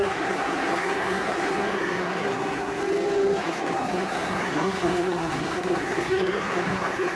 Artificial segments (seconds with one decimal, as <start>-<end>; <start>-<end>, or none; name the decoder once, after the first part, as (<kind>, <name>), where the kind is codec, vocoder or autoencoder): 0.0-2.8 (codec, SNAC); 3.4-7.2